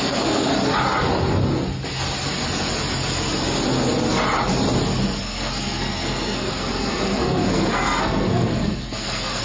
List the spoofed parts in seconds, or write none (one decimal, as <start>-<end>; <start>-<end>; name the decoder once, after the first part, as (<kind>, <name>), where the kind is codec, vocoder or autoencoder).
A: 0.0-0.5 (codec, SNAC); 5.2-9.4